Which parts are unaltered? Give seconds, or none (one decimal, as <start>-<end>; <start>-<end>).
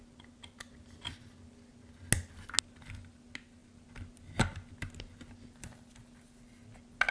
0.0-7.1